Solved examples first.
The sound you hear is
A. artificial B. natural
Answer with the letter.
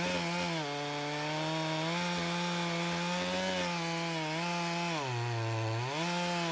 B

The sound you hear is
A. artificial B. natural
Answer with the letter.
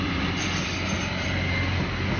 B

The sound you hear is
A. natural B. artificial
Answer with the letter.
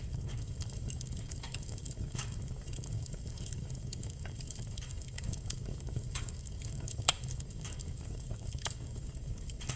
B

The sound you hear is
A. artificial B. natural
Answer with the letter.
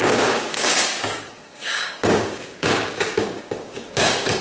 A